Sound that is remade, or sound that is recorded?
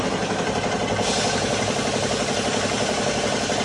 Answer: recorded